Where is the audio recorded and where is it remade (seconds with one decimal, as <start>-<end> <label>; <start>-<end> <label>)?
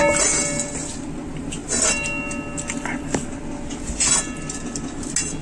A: 0.0-5.4 recorded